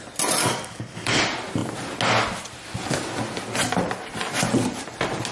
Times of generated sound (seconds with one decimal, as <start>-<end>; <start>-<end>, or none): 0.4-1.2